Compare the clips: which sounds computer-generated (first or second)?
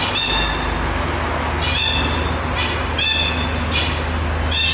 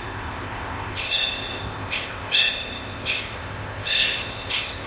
second